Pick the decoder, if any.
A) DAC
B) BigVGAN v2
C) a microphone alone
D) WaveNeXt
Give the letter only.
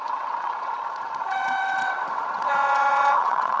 D